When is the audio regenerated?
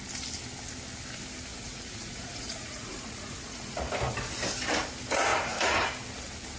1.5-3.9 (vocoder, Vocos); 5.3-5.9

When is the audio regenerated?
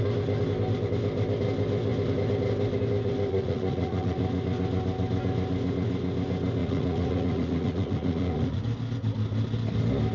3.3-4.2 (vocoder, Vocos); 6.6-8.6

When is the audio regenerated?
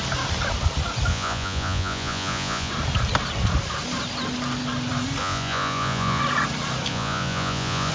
1.1-2.7 (vocoder, Vocos); 5.2-6.2; 6.9-7.9